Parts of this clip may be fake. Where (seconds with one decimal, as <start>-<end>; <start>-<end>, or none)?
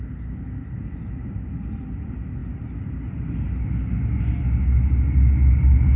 none